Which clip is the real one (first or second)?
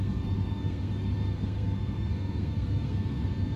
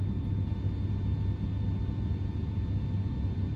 second